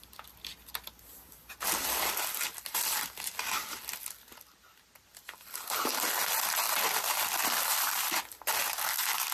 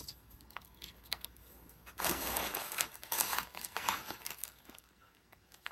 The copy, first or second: second